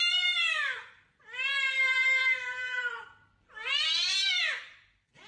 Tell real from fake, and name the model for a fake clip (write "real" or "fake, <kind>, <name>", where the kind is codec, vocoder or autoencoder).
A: fake, vocoder, BigVGAN v2